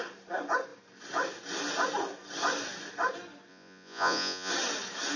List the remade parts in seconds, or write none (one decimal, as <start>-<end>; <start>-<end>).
3.5-4.5